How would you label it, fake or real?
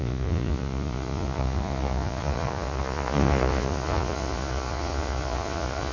fake